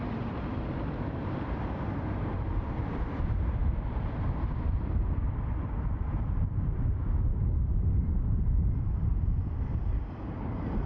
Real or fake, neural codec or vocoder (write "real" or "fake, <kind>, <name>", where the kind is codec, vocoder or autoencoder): fake, vocoder, BigVGAN v2